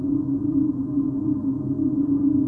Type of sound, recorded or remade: remade